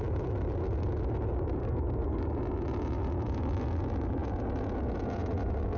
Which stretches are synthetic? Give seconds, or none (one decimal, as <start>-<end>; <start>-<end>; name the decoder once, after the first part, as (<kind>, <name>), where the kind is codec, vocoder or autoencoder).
1.6-2.2 (codec, SNAC)